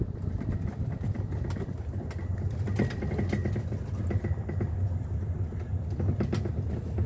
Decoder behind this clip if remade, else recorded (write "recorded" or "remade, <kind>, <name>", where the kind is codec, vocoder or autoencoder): recorded